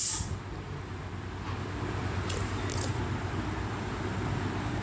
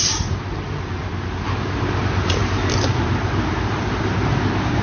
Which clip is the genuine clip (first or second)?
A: first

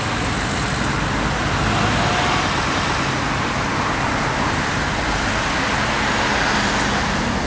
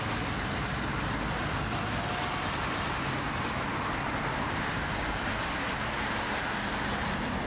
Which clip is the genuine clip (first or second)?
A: first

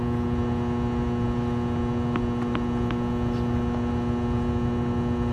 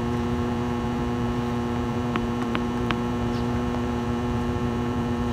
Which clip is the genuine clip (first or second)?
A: first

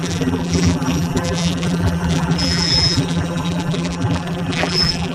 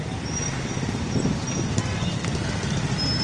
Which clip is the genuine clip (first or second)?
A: second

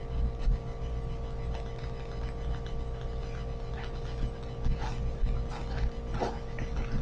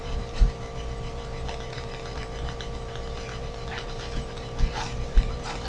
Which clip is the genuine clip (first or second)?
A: first